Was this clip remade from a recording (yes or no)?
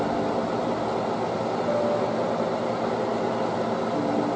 no